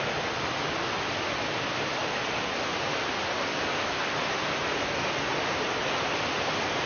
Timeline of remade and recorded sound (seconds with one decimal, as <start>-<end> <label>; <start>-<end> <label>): 0.0-6.9 recorded